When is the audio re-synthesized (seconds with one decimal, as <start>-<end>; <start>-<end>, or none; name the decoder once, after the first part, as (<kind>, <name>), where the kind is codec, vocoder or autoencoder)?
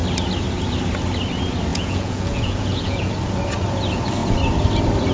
1.7-3.1 (vocoder, Vocos)